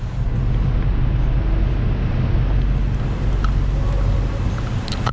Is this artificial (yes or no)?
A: no